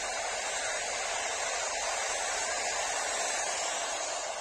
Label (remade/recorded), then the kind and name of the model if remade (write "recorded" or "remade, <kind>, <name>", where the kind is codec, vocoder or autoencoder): recorded